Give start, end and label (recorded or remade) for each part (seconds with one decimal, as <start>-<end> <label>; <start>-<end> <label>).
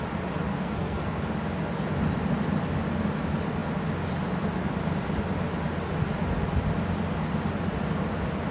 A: 0.0-0.5 recorded; 0.5-1.2 remade; 1.2-8.5 recorded